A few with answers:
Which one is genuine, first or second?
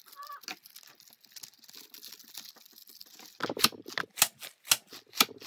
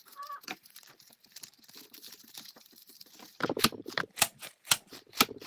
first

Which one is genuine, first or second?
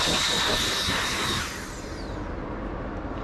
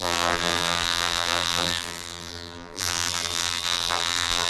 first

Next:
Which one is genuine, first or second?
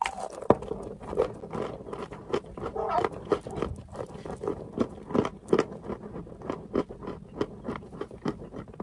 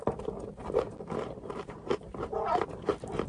first